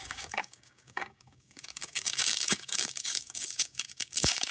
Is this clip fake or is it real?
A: fake